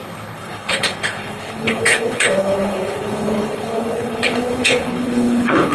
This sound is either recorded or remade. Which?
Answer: remade